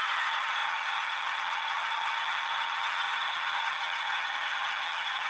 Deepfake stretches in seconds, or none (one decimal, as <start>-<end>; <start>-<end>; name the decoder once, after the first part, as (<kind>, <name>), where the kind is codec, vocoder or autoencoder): 0.0-5.3 (vocoder, HiFi-GAN)